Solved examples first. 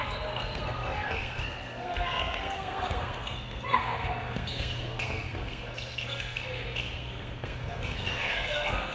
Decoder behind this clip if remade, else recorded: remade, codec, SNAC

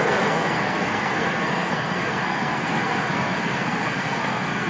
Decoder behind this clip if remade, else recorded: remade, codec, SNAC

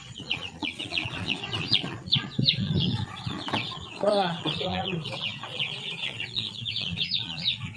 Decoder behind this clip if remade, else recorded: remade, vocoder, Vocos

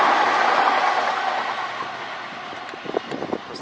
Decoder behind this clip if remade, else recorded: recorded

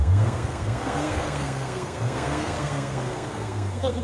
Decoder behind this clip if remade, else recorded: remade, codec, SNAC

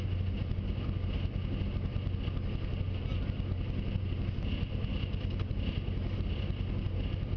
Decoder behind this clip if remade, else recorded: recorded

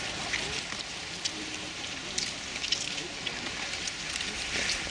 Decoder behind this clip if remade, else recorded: recorded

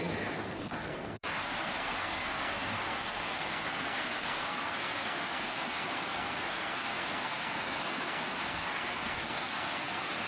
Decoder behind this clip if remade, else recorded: remade, codec, SNAC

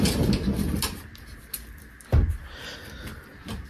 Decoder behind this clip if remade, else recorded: recorded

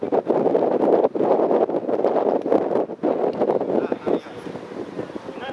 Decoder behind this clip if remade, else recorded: recorded